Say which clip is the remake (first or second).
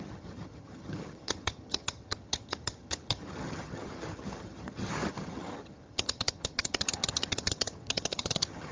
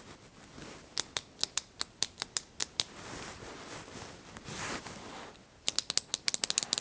first